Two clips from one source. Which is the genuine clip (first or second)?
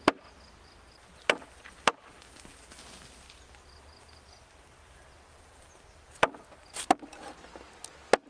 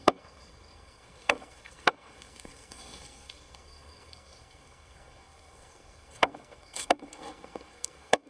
first